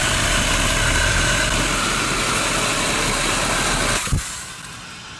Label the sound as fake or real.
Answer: real